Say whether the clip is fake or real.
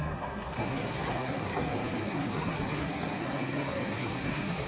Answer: fake